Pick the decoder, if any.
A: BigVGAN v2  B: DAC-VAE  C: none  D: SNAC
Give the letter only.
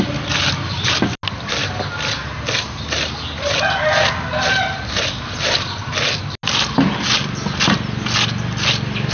C